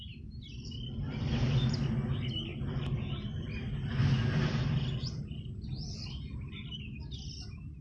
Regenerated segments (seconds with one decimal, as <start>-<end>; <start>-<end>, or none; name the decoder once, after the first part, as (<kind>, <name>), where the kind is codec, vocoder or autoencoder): none